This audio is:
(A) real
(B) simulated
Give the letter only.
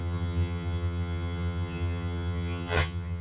B